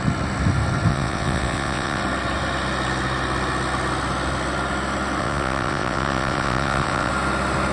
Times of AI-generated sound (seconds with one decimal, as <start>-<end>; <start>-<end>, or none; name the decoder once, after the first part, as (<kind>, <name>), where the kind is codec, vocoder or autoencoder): 0.9-2.0 (vocoder, WaveNeXt); 5.2-7.1